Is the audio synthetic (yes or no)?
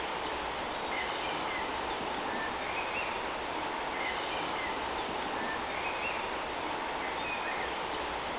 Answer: no